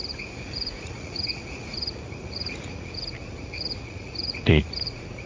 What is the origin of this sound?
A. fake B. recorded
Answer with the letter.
A